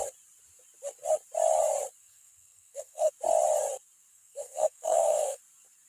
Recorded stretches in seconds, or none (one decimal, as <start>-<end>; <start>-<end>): 0.0-2.0; 3.1-4.1; 5.4-5.9